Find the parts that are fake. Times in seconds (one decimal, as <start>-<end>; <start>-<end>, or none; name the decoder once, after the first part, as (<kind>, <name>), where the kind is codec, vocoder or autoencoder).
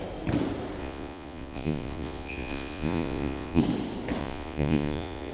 0.8-3.6 (vocoder, Vocos); 4.2-5.3